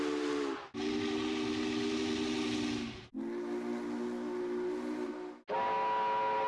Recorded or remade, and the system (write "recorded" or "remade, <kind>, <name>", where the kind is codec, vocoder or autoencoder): recorded